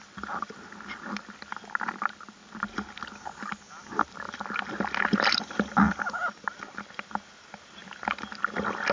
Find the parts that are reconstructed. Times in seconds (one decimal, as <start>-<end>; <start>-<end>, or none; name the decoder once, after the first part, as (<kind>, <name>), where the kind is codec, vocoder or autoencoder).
none